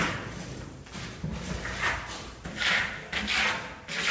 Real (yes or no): yes